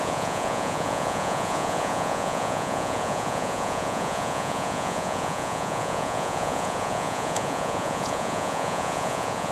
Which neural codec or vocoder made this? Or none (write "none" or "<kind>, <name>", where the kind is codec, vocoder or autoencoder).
vocoder, Vocos